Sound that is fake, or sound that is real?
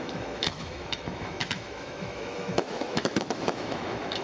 fake